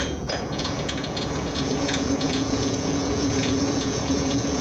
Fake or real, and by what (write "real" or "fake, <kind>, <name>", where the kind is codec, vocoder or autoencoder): fake, vocoder, Vocos